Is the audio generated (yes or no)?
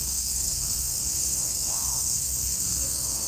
yes